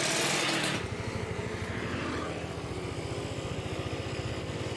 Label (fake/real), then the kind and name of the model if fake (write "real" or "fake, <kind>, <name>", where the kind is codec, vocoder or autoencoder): real